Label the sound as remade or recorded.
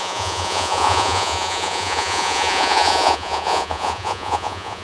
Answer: remade